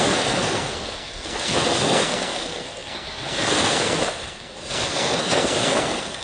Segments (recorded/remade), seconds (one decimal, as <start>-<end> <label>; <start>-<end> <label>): 0.0-6.2 remade